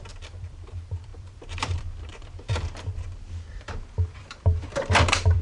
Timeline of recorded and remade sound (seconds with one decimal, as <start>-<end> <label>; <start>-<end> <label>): 0.0-5.4 remade